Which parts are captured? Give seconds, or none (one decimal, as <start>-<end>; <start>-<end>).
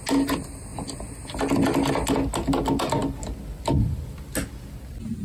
0.0-5.2